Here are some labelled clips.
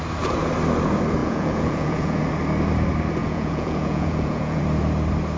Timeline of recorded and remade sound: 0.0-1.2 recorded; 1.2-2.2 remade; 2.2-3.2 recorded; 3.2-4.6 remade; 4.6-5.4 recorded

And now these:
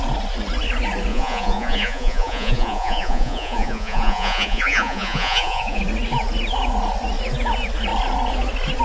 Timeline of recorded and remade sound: 0.0-1.1 recorded; 1.1-5.8 remade; 5.8-8.8 recorded

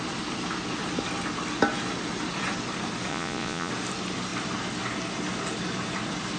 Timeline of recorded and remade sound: 0.0-3.1 recorded; 3.1-3.7 remade; 3.7-6.4 recorded